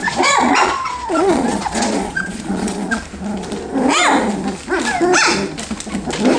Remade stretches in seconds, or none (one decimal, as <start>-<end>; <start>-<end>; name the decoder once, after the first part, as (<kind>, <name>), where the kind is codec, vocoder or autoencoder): 0.0-2.9 (vocoder, Vocos)